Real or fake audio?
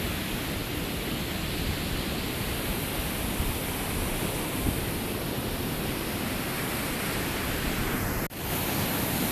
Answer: real